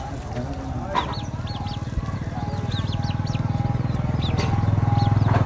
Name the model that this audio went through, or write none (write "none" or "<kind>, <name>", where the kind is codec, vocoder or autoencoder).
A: none